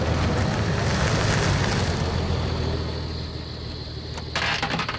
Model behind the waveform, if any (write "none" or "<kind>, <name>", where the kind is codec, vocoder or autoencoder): none